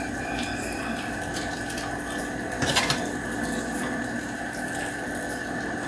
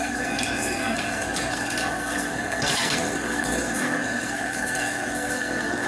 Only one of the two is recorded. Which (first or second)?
first